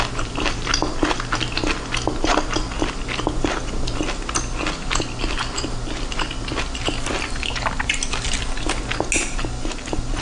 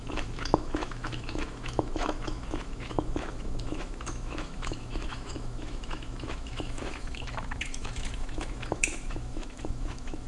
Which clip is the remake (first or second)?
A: second